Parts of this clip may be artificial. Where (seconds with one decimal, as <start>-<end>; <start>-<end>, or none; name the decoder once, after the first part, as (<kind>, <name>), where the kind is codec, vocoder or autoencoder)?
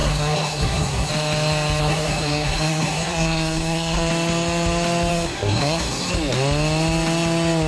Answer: 0.0-1.1 (codec, SNAC); 1.8-4.1; 5.1-6.1